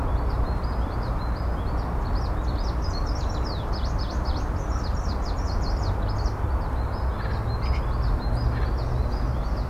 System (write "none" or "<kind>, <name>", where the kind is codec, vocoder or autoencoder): none